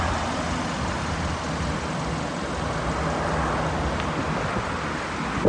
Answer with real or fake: real